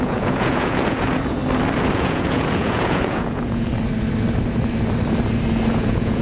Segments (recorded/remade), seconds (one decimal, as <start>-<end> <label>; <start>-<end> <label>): 0.0-1.4 remade; 1.4-1.9 recorded; 1.9-3.7 remade; 3.7-5.7 recorded; 5.7-6.2 remade